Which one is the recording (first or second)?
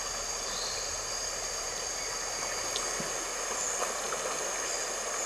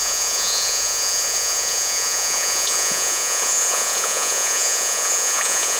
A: first